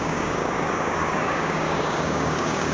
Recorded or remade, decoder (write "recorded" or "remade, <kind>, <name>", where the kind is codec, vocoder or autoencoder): remade, codec, DAC